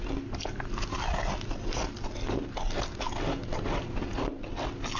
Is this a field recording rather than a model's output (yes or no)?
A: yes